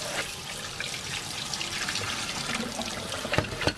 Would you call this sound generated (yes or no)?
yes